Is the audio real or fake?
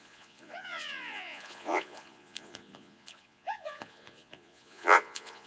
fake